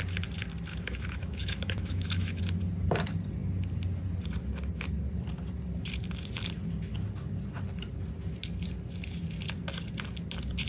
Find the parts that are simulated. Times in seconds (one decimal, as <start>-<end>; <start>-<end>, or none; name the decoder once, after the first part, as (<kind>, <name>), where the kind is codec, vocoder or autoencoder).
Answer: 0.7-2.4 (autoencoder, DAC-VAE)